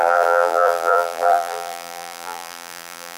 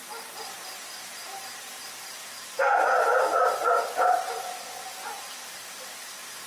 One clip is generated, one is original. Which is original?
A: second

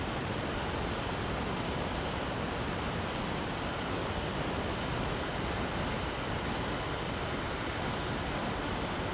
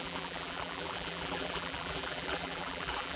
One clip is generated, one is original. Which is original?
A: first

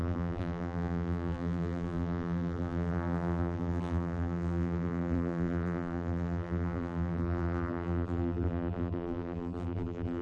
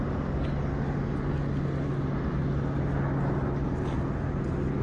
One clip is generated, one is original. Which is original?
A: second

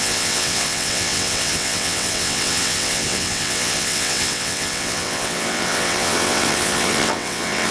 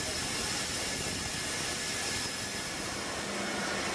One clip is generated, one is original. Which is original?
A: second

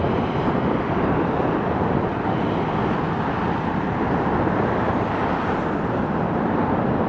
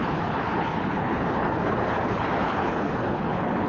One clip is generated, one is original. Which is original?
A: first